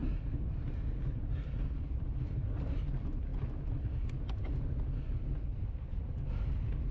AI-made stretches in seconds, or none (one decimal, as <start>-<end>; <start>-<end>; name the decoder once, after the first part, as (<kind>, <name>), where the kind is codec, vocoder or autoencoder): 0.0-2.6 (vocoder, BigVGAN v2)